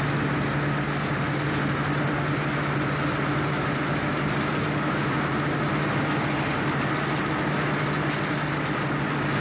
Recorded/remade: recorded